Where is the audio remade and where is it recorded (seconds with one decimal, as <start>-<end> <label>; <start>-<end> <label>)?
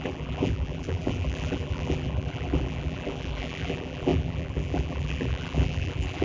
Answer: 0.0-6.2 remade